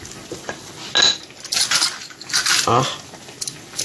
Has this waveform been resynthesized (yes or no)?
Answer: no